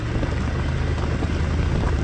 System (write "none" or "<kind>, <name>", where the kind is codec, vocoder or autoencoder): none